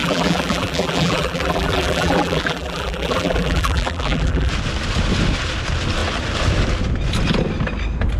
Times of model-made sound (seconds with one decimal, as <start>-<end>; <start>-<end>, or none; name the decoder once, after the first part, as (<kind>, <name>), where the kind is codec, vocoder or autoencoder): 0.0-4.5 (vocoder, BigVGAN v2)